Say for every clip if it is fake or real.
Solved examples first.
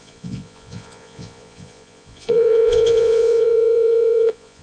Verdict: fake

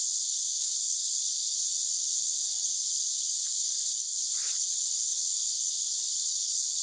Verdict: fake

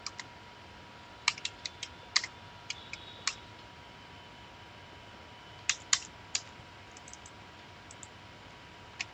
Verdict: real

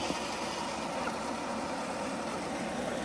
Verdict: real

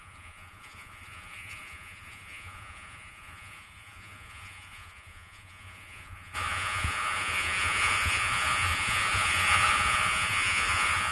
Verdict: fake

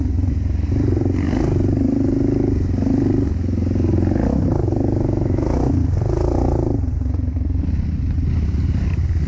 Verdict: real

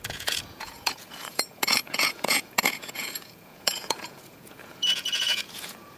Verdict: fake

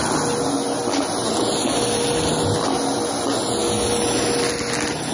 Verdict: real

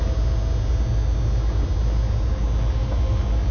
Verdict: real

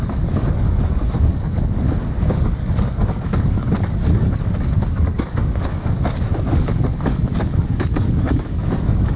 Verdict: fake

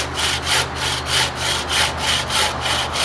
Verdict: real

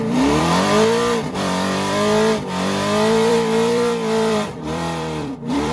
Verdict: fake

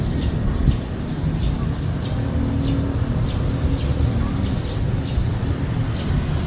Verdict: real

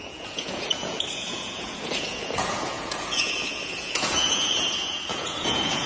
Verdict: fake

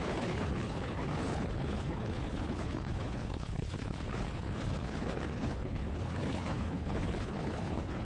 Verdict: fake